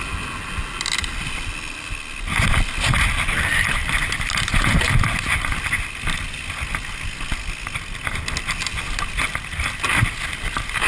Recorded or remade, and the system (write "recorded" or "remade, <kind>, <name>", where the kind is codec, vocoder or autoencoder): recorded